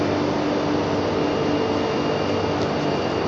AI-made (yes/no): no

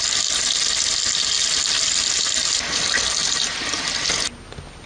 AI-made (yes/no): no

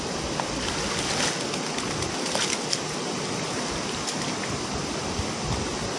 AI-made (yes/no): no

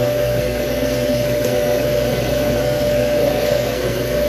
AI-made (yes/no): yes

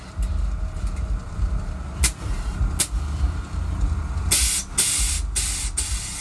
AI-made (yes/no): no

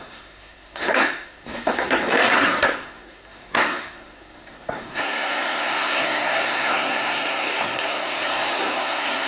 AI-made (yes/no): yes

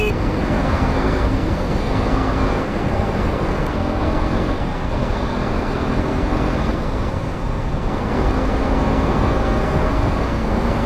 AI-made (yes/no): yes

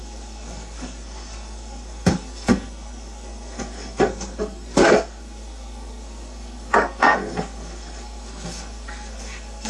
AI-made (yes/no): yes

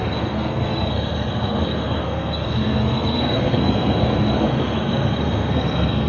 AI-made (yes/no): yes